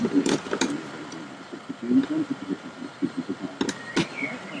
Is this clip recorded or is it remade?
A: recorded